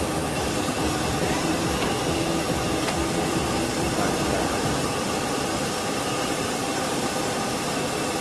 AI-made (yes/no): yes